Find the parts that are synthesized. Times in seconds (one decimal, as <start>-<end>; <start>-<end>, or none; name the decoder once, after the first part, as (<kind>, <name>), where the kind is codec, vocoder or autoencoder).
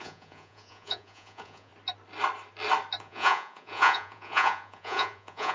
0.0-1.7 (vocoder, Vocos); 3.0-5.5